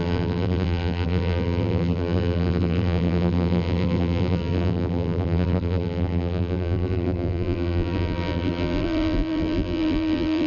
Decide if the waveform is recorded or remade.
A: remade